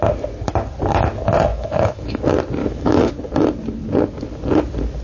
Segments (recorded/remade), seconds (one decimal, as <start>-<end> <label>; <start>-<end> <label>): 0.0-1.5 recorded; 1.5-2.2 remade; 2.2-2.6 recorded; 2.6-3.1 remade; 3.1-5.0 recorded